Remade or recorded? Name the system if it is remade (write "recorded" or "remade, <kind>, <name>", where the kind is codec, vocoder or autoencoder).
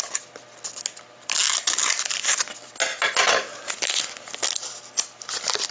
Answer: recorded